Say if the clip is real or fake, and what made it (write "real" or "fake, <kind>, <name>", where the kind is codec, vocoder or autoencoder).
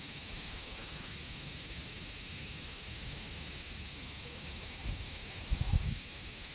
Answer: fake, autoencoder, DAC-VAE